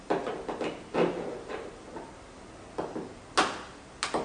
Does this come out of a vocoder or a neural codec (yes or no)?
no